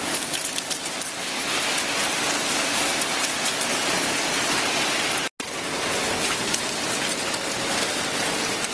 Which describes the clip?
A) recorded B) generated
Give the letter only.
A